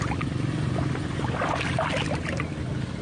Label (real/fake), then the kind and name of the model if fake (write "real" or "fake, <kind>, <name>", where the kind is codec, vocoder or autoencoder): real